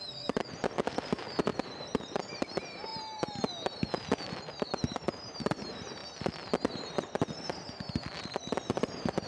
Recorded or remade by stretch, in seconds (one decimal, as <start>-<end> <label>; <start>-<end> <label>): 0.0-2.9 remade; 2.9-4.4 recorded; 4.4-6.0 remade; 6.0-7.0 recorded; 7.0-9.3 remade